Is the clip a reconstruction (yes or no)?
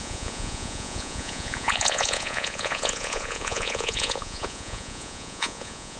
yes